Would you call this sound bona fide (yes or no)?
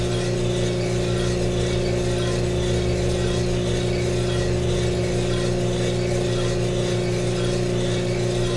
yes